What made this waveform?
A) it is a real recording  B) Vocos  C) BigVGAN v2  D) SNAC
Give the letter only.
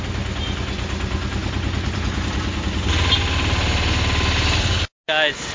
A